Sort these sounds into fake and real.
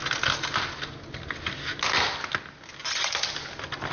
real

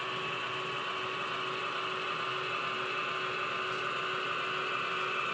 real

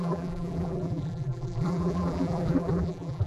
fake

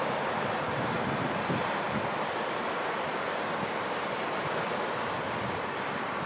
fake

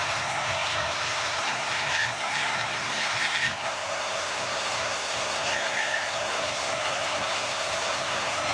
fake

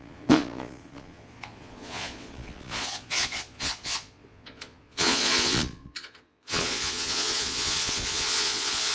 fake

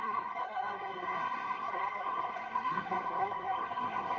fake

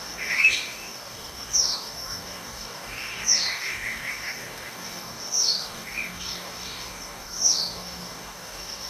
fake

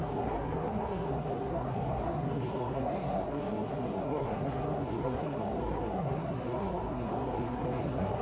fake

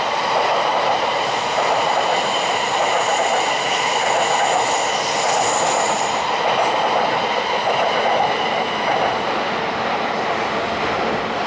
real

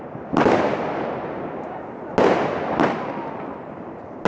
real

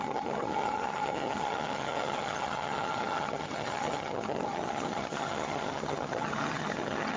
fake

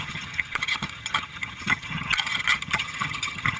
fake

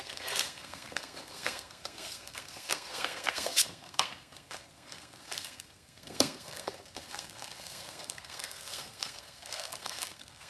fake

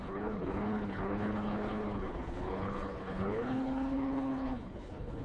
fake